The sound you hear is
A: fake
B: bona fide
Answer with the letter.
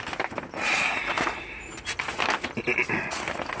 B